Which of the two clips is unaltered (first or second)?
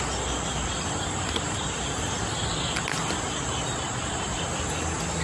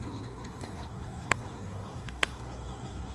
first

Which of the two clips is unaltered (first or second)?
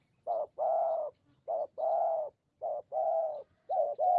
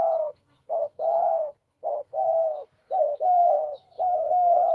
first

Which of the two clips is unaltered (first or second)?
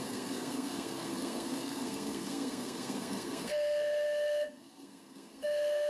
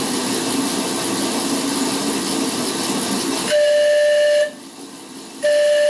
second